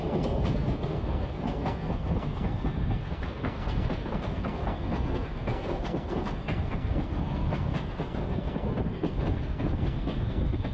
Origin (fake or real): fake